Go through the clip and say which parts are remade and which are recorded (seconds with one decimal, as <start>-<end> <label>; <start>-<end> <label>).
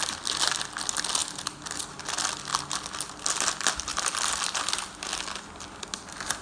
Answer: 0.0-3.9 recorded; 3.9-4.7 remade; 4.7-6.4 recorded